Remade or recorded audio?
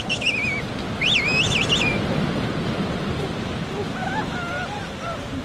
recorded